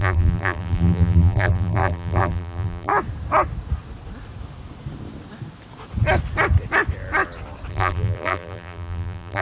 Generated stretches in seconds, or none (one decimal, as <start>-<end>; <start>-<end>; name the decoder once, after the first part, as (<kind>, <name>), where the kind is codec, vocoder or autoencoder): 0.0-2.9 (vocoder, BigVGAN v2); 7.7-9.4